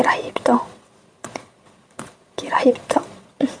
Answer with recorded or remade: remade